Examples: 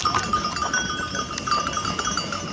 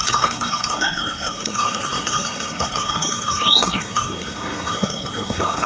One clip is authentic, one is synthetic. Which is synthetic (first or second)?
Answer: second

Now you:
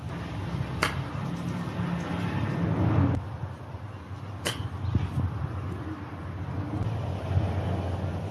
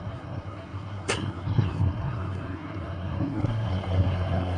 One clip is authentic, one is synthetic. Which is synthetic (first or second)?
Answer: second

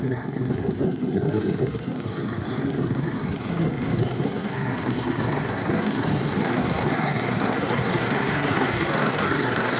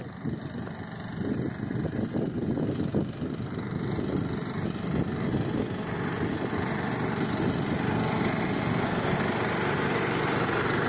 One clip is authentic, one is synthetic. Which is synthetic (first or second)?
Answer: first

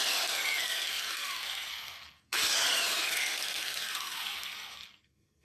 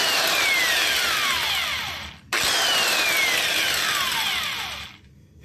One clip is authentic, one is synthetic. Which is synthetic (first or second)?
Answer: first